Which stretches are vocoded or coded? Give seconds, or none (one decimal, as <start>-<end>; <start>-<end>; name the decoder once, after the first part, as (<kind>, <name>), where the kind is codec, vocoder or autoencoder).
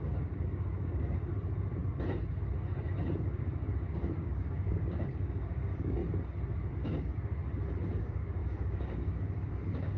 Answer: 0.0-1.3 (codec, DAC); 3.2-6.0; 6.7-7.4; 8.0-10.0